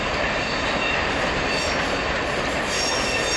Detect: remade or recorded recorded